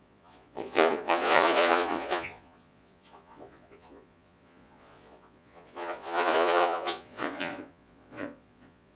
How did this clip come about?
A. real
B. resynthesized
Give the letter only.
B